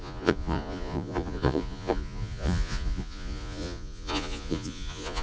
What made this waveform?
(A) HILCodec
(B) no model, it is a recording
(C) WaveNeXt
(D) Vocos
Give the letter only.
D